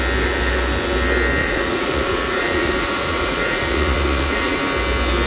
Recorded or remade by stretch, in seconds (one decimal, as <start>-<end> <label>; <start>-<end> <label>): 0.0-1.4 recorded; 1.4-4.6 remade; 4.6-5.3 recorded